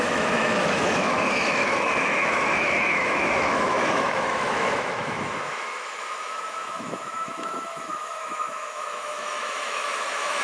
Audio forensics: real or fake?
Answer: fake